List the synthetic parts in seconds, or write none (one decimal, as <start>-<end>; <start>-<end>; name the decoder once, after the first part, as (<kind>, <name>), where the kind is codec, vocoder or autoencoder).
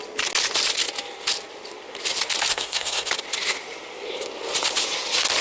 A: 2.5-3.1 (codec, SNAC)